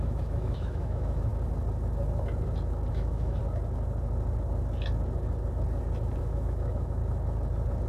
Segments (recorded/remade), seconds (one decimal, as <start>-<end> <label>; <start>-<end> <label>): 0.0-1.3 remade; 1.3-2.9 recorded; 2.9-3.4 remade; 3.4-6.2 recorded; 6.2-7.0 remade; 7.0-7.9 recorded